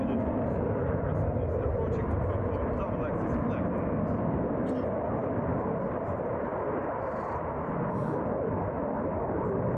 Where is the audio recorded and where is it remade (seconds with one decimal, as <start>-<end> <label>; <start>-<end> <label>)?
0.0-9.8 recorded